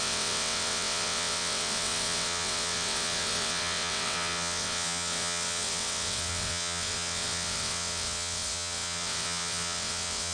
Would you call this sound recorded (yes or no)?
no